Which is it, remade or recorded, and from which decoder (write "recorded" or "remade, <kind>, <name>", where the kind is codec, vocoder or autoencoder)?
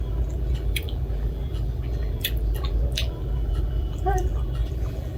remade, vocoder, BigVGAN v2